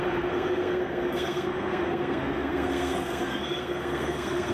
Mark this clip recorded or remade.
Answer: remade